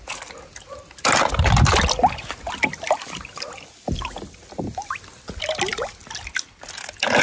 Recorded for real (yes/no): yes